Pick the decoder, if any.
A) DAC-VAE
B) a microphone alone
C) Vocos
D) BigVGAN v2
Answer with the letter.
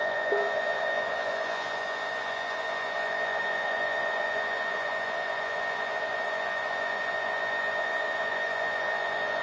C